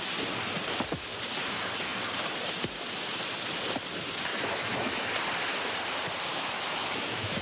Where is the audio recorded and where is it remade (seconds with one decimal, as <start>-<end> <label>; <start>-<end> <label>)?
0.0-4.3 recorded; 4.3-5.1 remade; 5.1-6.3 recorded; 6.3-7.4 remade